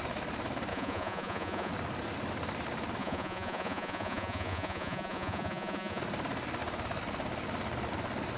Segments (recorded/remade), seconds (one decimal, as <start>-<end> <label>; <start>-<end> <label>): 0.0-0.7 recorded; 0.7-1.7 remade; 1.7-3.0 recorded; 3.0-6.0 remade; 6.0-8.4 recorded